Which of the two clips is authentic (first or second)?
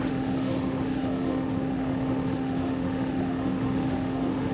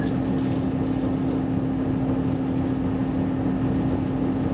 second